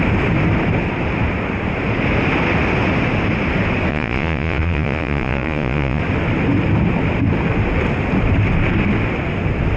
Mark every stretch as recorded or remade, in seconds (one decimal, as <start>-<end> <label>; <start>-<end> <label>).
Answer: 0.0-3.9 recorded; 3.9-6.0 remade; 6.0-9.8 recorded